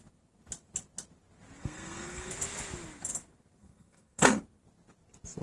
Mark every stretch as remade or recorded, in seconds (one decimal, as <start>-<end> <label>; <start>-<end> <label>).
0.0-1.6 recorded; 1.6-2.3 remade; 2.3-3.6 recorded; 3.6-4.4 remade; 4.4-5.4 recorded